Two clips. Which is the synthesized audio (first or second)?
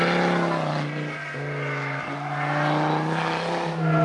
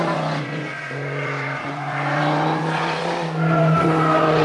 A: second